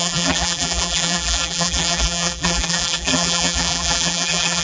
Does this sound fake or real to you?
fake